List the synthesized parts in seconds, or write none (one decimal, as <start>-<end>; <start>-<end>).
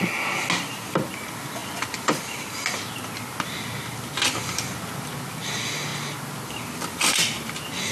none